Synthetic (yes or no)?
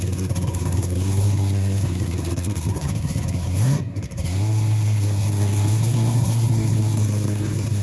yes